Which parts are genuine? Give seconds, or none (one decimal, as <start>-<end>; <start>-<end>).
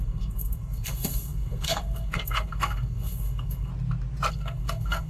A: 3.7-4.3